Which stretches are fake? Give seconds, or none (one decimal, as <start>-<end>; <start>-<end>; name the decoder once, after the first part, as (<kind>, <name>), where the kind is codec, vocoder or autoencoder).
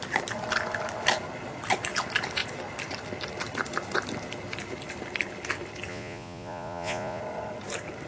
5.9-7.2 (vocoder, Vocos)